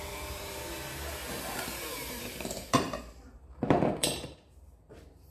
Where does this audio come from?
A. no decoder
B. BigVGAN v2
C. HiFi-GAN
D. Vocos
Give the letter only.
B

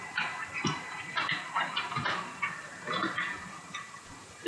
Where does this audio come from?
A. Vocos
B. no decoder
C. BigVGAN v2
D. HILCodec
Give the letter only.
C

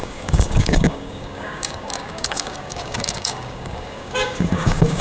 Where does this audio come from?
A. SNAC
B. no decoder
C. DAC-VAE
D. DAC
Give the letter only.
D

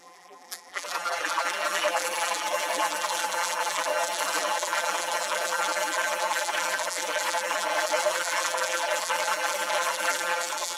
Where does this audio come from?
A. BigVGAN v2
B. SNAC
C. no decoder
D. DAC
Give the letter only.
A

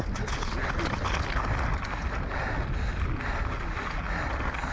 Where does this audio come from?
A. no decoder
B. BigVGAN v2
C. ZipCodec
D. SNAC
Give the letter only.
A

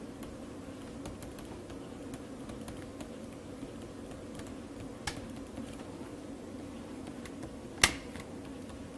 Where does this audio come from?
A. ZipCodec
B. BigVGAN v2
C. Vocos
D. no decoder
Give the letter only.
D